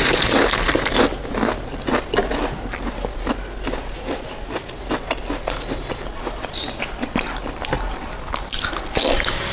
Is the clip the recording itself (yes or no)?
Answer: yes